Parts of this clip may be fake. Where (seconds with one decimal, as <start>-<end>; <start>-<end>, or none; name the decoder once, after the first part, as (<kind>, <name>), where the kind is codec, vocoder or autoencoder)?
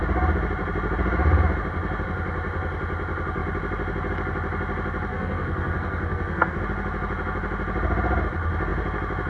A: 5.1-6.6 (codec, SNAC)